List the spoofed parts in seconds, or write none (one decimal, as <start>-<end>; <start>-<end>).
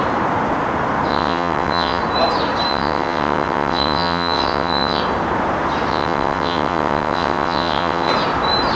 1.1-2.0; 2.7-5.0; 5.9-8.1